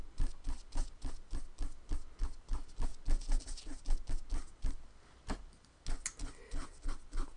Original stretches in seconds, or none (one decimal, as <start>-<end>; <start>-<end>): 0.0-7.4